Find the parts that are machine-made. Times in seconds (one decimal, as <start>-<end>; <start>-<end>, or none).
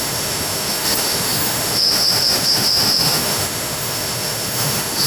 0.0-5.1